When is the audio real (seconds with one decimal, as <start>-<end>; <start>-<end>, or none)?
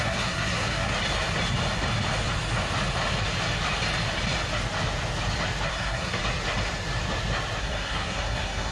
0.9-5.7; 6.2-7.6